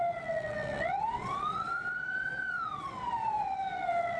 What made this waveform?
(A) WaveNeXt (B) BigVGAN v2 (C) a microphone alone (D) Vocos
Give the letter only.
A